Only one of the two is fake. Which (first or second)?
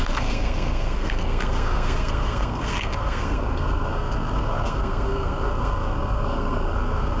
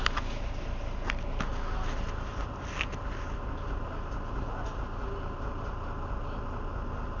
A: first